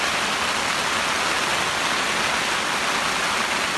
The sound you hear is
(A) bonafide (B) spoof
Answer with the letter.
A